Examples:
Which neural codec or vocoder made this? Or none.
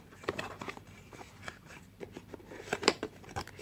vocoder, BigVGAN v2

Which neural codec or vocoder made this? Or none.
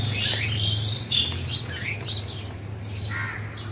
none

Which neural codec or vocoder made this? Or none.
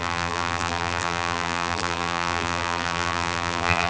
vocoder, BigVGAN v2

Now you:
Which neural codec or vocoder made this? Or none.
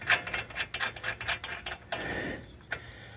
none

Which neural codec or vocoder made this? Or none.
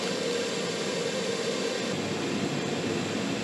none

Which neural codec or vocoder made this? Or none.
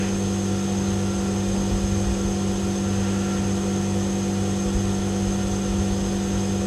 none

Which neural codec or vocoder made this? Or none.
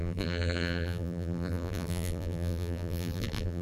vocoder, BigVGAN v2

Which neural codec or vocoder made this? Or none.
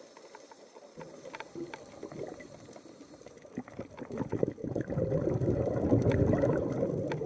vocoder, BigVGAN v2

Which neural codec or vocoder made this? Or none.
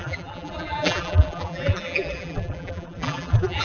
vocoder, BigVGAN v2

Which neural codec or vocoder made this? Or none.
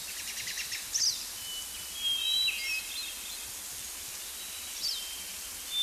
none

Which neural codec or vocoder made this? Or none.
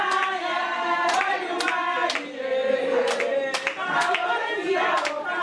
none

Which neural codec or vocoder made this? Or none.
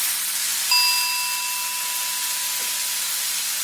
none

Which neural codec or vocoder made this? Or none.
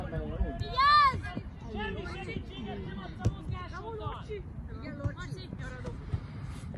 none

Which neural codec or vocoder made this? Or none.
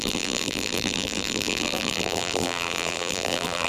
vocoder, BigVGAN v2